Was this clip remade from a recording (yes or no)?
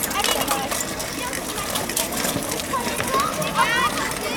no